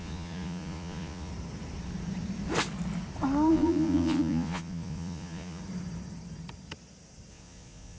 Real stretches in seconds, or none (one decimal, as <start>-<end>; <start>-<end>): 1.3-3.5; 5.6-7.3